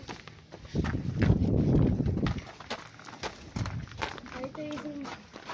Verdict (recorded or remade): recorded